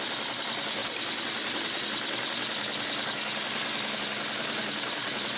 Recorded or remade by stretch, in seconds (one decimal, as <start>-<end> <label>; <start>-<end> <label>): 0.0-5.4 recorded